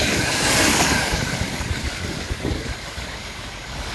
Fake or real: fake